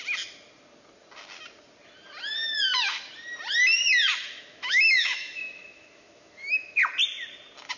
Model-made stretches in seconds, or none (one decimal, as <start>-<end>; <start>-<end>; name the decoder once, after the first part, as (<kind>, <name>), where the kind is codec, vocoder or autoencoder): 4.4-6.8 (autoencoder, DAC-VAE)